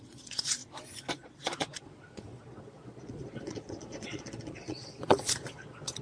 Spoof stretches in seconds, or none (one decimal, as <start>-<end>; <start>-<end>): 0.0-0.6; 1.1-6.0